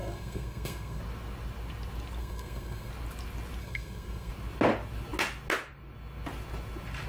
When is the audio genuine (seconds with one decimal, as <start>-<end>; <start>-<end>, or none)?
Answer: 1.0-2.2; 2.9-3.6; 4.3-7.1